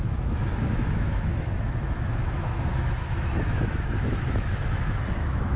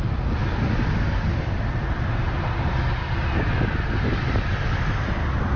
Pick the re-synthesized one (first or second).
first